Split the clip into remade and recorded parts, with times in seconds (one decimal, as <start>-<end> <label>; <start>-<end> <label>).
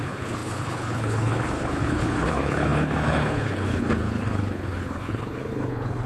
0.0-6.1 remade